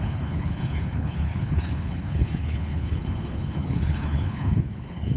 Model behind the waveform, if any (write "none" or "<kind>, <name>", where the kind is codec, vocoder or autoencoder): codec, HILCodec